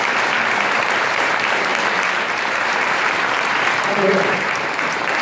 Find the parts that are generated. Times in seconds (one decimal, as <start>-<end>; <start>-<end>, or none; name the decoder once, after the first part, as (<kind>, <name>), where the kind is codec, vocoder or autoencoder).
0.0-1.7 (vocoder, BigVGAN v2); 2.3-5.2

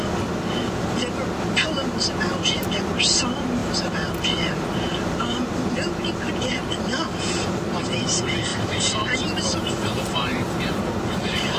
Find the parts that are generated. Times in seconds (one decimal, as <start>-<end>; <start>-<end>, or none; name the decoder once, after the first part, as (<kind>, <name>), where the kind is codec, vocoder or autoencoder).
8.5-11.6 (vocoder, BigVGAN v2)

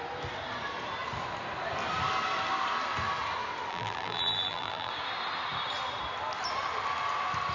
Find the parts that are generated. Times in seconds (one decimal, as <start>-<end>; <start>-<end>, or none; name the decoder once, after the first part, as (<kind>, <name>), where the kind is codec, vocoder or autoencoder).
3.7-4.9 (vocoder, BigVGAN v2)

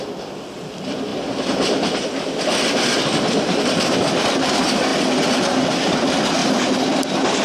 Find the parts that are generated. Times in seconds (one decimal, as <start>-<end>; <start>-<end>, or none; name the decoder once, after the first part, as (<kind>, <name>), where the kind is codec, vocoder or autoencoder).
1.1-4.1 (vocoder, BigVGAN v2); 6.4-7.0

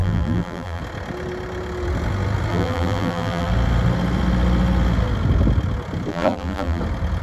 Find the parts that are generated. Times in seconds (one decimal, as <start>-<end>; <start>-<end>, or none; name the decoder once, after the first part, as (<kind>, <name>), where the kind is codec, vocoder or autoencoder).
0.0-0.8 (vocoder, BigVGAN v2); 2.5-3.5; 6.1-6.8

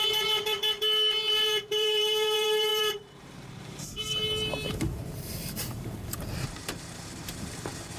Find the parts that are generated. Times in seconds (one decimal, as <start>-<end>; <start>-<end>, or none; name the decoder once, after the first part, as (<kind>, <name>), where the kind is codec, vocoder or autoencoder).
0.0-8.0 (vocoder, BigVGAN v2)

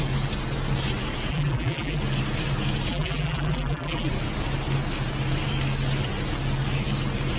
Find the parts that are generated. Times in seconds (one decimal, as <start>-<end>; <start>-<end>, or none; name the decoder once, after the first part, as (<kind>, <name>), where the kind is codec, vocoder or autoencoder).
1.3-2.0 (vocoder, BigVGAN v2); 2.9-4.1